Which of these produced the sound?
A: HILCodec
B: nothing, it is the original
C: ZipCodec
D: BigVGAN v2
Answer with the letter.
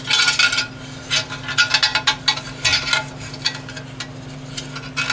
B